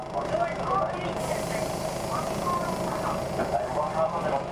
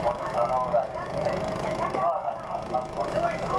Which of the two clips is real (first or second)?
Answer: first